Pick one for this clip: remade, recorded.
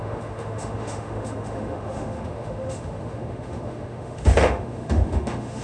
remade